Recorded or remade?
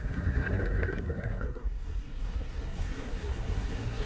remade